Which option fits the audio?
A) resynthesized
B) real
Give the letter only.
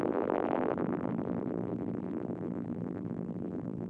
A